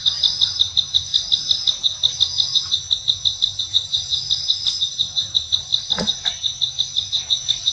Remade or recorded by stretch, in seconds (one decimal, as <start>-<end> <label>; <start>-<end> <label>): 0.0-1.1 remade; 1.1-3.6 recorded; 3.6-4.1 remade; 4.1-4.7 recorded; 4.7-5.7 remade; 5.7-7.7 recorded